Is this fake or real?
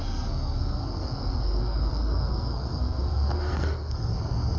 fake